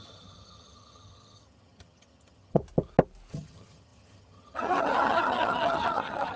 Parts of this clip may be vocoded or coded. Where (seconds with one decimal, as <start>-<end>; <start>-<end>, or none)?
0.0-2.6; 3.3-6.4